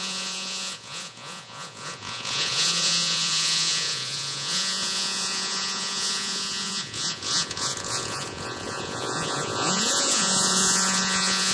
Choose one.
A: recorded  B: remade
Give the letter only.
B